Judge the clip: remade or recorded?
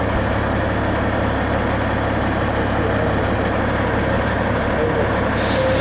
recorded